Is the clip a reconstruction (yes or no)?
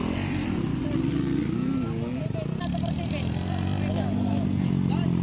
no